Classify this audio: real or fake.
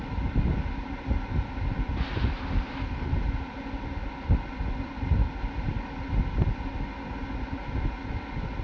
real